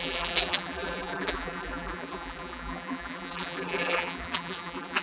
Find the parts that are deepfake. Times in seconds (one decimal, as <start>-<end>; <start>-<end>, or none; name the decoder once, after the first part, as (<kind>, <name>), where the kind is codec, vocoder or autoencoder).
0.0-5.0 (vocoder, BigVGAN v2)